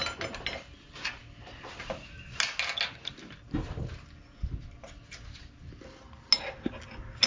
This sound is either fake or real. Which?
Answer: real